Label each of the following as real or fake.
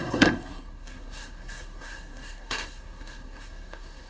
fake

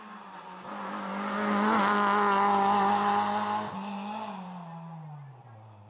real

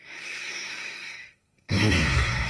fake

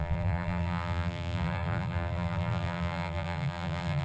fake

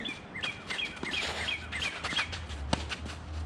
real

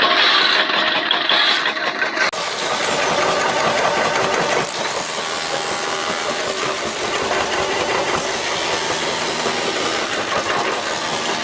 real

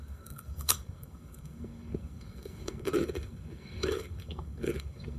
fake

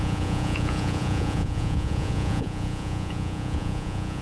fake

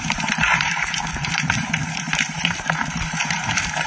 fake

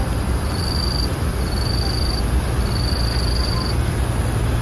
real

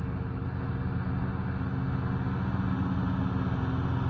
real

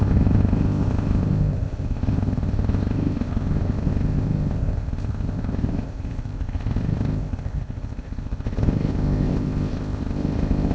fake